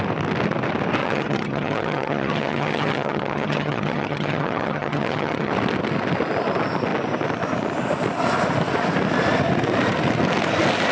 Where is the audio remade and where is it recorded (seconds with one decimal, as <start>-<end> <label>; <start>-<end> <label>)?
0.0-1.0 recorded; 1.0-5.5 remade; 5.5-10.9 recorded